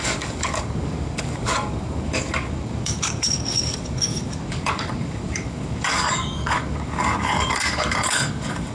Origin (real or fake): fake